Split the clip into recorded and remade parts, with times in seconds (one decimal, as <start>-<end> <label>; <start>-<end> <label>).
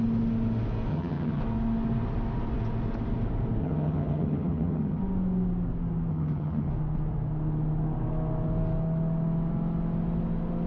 0.0-0.9 recorded; 0.9-1.4 remade; 1.4-3.6 recorded; 3.6-5.0 remade; 5.0-6.1 recorded; 6.1-6.7 remade; 6.7-10.7 recorded